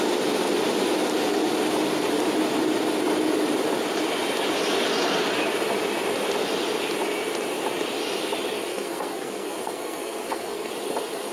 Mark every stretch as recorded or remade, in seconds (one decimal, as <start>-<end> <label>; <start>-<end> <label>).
0.0-8.7 recorded; 8.7-10.7 remade; 10.7-11.3 recorded